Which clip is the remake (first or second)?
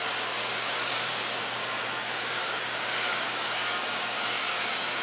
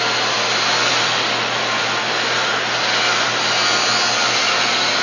first